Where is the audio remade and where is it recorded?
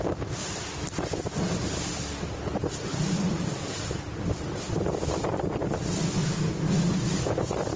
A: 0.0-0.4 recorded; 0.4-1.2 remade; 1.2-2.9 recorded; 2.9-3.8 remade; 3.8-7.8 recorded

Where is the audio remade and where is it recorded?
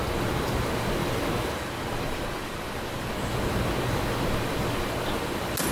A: 0.0-5.7 recorded